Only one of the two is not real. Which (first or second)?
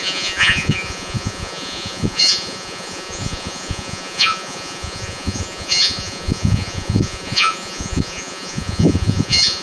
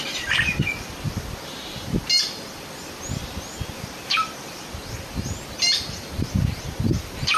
first